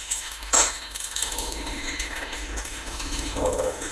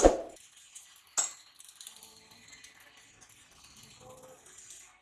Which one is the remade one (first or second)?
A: first